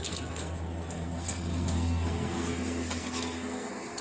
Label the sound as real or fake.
fake